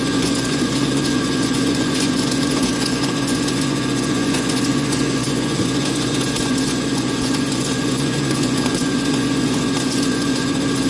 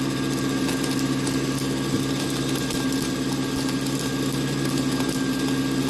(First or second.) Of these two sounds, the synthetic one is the first